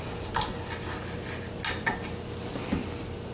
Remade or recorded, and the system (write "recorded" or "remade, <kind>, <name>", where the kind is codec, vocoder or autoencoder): recorded